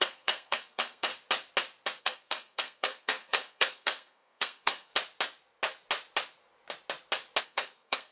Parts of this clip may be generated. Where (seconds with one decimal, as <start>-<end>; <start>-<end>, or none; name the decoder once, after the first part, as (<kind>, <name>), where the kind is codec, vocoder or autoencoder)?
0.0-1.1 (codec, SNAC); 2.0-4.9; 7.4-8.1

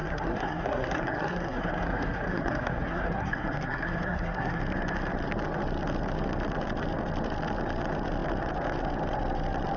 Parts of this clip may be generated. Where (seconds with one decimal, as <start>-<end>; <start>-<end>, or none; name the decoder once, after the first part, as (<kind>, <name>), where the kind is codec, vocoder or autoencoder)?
0.0-4.6 (codec, SNAC)

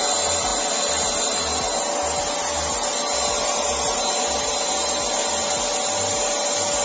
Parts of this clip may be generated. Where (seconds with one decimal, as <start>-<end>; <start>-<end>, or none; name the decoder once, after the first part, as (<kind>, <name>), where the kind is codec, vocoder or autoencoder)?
none

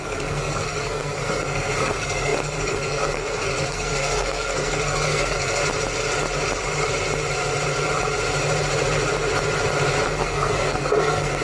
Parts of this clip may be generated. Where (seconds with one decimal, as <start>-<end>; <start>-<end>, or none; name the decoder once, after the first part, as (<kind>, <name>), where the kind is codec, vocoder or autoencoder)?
0.0-5.6 (codec, SNAC); 10.0-11.4

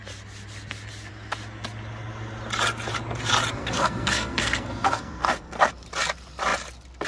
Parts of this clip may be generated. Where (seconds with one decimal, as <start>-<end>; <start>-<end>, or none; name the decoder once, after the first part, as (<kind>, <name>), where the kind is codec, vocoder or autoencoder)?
3.6-5.7 (codec, SNAC)

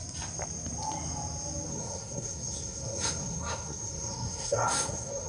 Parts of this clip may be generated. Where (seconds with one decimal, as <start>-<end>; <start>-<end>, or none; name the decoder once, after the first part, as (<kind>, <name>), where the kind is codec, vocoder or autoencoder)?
1.7-5.3 (codec, SNAC)